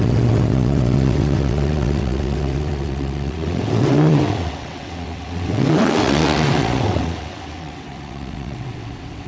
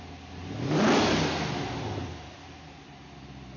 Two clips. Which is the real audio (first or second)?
second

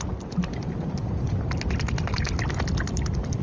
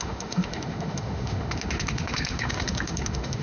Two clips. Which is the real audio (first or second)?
first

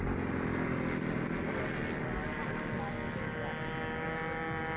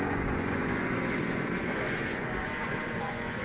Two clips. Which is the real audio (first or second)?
first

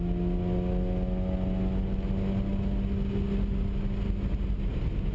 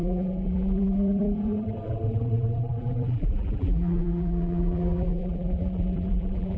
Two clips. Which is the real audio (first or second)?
first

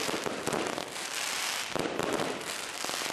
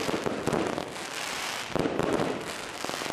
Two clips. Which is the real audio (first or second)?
second